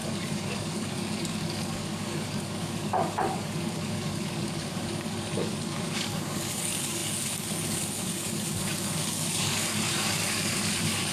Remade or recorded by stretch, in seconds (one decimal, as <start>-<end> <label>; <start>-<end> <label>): 0.0-11.1 remade